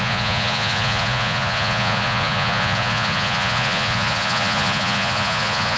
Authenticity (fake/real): fake